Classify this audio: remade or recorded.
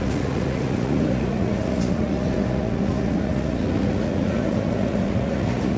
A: remade